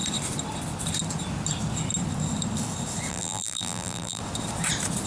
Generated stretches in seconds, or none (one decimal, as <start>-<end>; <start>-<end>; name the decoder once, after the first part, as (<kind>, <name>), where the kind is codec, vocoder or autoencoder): 3.1-4.2 (vocoder, BigVGAN v2)